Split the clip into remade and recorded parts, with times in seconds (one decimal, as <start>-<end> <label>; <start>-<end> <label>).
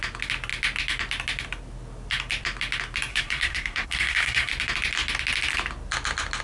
0.0-3.1 recorded; 3.1-4.5 remade; 4.5-6.4 recorded